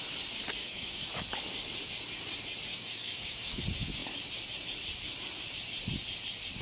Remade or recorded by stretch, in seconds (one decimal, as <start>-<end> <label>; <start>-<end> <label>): 0.0-0.6 recorded; 0.6-1.1 remade; 1.1-2.7 recorded; 2.7-3.6 remade; 3.6-6.6 recorded